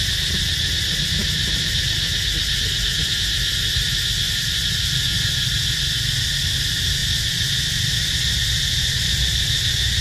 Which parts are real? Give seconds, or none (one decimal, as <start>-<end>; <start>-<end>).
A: 0.0-10.0